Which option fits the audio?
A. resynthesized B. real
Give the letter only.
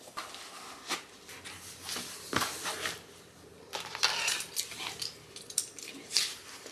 B